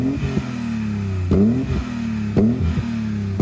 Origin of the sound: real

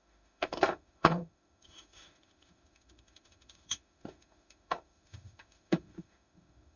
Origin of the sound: fake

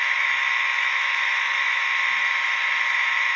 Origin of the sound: fake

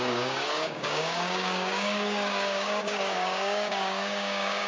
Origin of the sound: fake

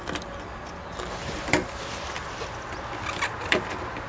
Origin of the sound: real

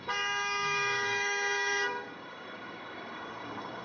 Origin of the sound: fake